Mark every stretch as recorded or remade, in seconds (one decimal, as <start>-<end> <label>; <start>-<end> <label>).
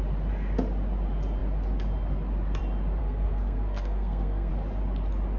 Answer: 0.0-3.0 recorded; 3.0-4.5 remade; 4.5-5.4 recorded